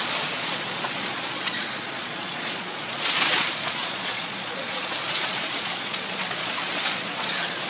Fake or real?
fake